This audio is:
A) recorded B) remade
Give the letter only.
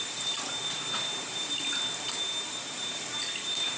B